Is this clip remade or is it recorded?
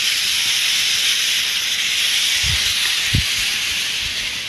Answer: recorded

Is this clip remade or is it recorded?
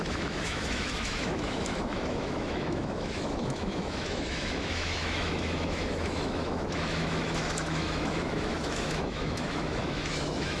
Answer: remade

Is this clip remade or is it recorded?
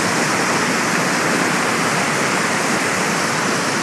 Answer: recorded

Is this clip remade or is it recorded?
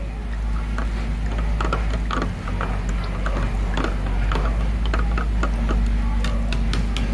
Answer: recorded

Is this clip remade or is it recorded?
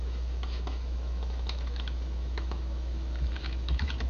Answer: remade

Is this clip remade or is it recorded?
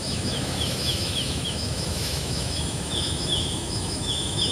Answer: remade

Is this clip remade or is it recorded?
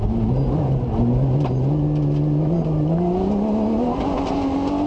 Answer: recorded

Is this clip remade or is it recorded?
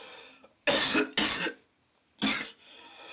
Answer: recorded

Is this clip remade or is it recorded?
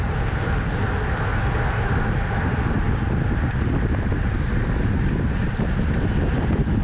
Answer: recorded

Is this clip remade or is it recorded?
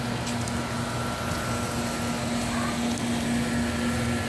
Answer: recorded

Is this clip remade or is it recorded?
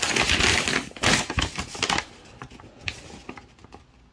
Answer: recorded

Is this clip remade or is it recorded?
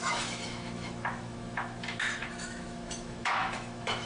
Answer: remade